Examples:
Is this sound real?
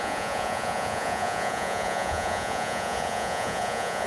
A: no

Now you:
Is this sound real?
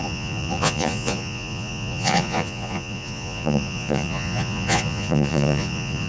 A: no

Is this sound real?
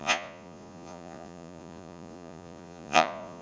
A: no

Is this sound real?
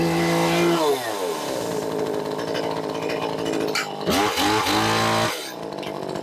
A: yes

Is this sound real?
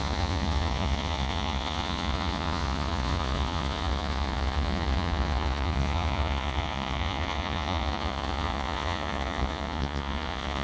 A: no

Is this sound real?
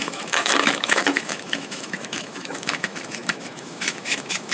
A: no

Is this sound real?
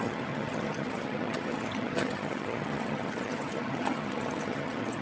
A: no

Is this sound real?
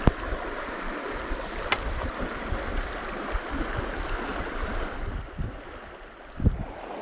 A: yes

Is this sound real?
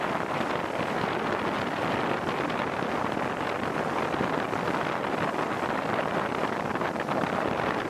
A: yes